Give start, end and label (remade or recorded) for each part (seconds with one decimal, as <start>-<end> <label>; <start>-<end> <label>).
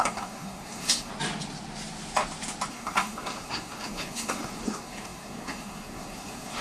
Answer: 0.0-1.1 remade; 1.1-2.7 recorded; 2.7-6.6 remade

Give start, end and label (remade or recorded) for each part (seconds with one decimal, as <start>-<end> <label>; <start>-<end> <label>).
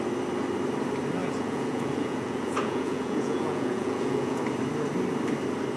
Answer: 0.0-1.2 recorded; 1.2-4.4 remade; 4.4-5.8 recorded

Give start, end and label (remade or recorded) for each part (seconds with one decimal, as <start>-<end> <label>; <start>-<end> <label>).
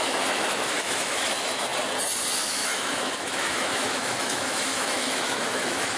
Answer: 0.0-1.7 remade; 1.7-2.4 recorded; 2.4-6.0 remade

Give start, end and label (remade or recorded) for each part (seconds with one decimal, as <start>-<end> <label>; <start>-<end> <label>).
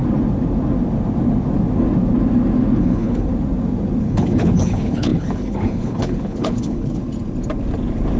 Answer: 0.0-2.8 recorded; 2.8-3.3 remade; 3.3-4.0 recorded; 4.0-7.0 remade; 7.0-8.2 recorded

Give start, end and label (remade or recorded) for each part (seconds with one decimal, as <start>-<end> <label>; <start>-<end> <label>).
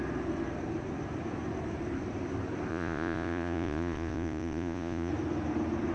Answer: 0.0-2.7 recorded; 2.7-5.1 remade; 5.1-5.9 recorded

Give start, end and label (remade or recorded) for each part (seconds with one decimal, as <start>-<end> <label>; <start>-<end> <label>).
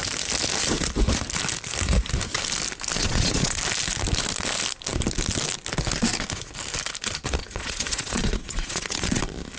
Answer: 0.0-3.0 recorded; 3.0-3.6 remade; 3.6-7.4 recorded; 7.4-9.2 remade; 9.2-9.6 recorded